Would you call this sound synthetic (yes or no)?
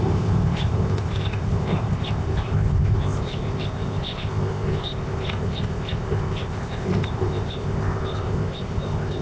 yes